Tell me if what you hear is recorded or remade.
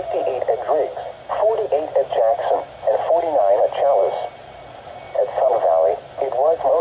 recorded